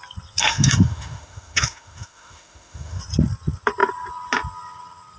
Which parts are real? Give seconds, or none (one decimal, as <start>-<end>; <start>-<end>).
0.0-0.4; 3.0-5.2